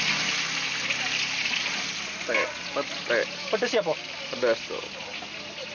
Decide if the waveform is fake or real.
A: real